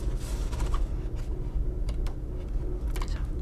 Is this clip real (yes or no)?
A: yes